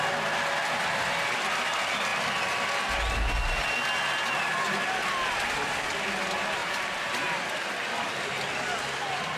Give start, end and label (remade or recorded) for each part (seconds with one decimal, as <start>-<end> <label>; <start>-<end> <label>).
0.0-6.6 recorded; 6.6-7.4 remade; 7.4-9.4 recorded